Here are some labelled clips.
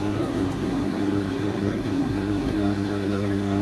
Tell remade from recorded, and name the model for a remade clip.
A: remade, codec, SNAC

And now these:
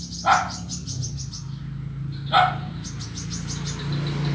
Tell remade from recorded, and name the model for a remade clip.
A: recorded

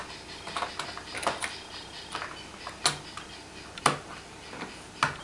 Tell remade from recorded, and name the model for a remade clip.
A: recorded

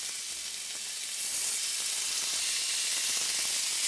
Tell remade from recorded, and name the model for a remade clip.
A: recorded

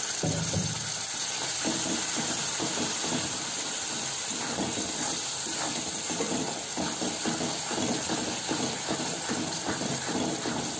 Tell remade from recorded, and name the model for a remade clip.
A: recorded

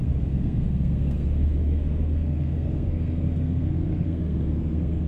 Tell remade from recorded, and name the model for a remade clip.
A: remade, codec, SNAC